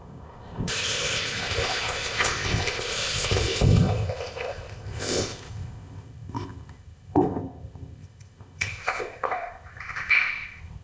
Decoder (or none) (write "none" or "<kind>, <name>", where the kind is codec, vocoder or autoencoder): codec, ZipCodec